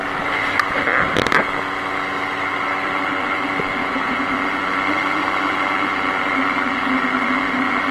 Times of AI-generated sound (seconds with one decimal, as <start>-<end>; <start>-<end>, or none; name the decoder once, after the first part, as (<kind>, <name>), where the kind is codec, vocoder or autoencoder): 3.8-4.3 (vocoder, Vocos)

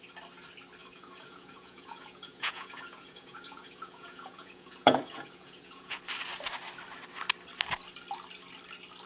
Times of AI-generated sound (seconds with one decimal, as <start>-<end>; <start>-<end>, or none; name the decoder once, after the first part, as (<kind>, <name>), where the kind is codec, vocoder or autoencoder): 0.8-6.0 (vocoder, Vocos)

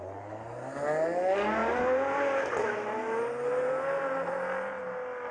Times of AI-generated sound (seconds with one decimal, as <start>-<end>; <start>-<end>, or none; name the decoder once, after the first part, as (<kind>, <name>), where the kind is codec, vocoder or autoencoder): none

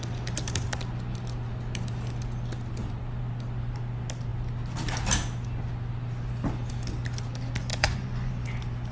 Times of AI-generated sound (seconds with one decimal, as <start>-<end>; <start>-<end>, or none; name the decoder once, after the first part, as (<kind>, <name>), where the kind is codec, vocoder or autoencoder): 7.7-8.3 (vocoder, Vocos)